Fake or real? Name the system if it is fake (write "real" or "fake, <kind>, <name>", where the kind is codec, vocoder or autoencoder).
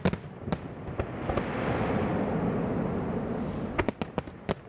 real